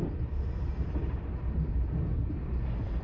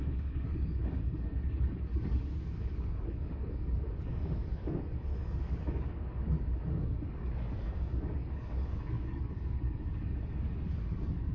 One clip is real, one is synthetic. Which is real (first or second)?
first